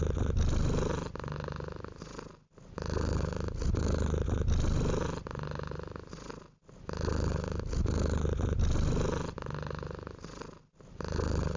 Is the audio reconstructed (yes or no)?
no